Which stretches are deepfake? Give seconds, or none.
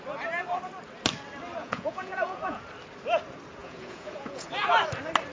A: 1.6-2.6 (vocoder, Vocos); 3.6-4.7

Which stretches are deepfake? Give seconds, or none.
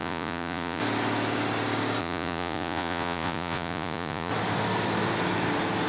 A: 0.0-0.8 (vocoder, Vocos); 2.0-4.3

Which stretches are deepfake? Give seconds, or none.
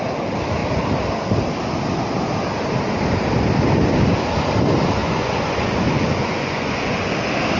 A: 5.0-7.1 (vocoder, Vocos)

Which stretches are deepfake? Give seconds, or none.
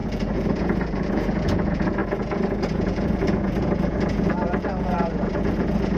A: 0.0-6.0 (vocoder, Vocos)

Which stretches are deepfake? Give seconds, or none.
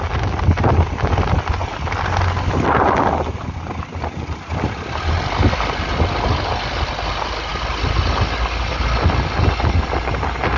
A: none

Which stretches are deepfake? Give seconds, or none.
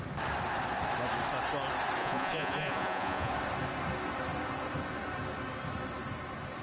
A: 2.0-3.3 (vocoder, Vocos)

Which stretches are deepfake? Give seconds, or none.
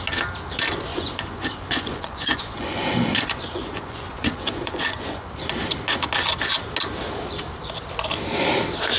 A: 0.9-5.3 (vocoder, Vocos)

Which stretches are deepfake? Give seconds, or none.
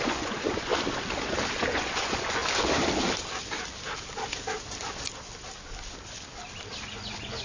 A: 0.0-0.7 (vocoder, Vocos); 1.7-2.4; 6.8-7.4